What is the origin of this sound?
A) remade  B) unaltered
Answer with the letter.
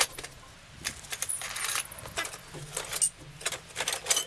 B